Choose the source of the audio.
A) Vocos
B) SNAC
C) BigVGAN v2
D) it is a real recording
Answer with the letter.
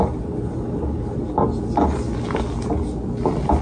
D